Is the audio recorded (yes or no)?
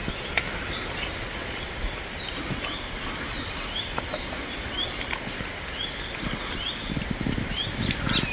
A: yes